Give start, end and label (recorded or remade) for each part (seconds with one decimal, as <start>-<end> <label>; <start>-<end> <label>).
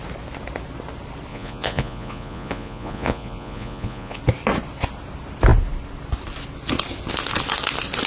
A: 0.0-1.3 recorded; 1.3-4.2 remade; 4.2-8.1 recorded